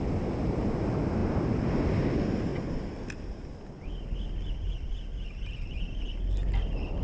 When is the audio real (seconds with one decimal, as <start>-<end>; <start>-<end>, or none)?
0.0-5.1; 5.8-7.0